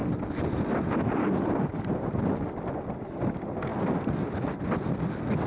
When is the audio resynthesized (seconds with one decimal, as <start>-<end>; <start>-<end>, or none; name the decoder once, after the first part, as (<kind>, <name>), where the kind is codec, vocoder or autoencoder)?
0.0-2.0 (vocoder, BigVGAN v2); 3.7-4.9